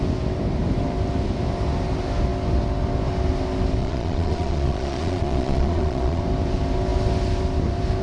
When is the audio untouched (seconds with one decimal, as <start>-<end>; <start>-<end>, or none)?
0.0-3.8; 6.2-8.0